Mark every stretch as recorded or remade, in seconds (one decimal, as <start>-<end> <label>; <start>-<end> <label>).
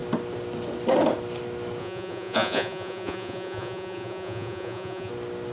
0.0-1.8 recorded; 1.8-5.1 remade; 5.1-5.5 recorded